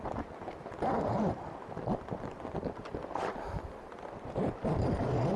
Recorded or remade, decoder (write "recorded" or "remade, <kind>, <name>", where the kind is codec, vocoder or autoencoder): recorded